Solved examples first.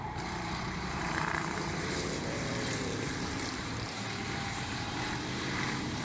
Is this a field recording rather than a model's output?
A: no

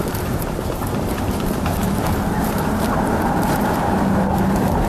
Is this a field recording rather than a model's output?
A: no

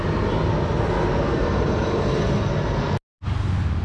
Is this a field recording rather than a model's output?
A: yes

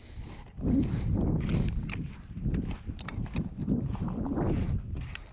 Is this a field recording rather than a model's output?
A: yes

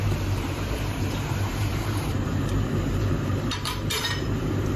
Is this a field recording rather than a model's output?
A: no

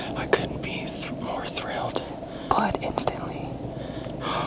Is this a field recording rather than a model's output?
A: yes